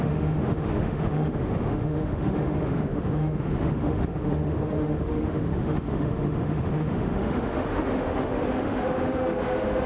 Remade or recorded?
remade